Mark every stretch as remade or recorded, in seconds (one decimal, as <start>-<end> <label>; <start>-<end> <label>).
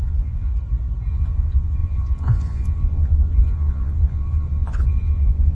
0.0-0.5 remade; 0.5-1.1 recorded; 1.1-5.5 remade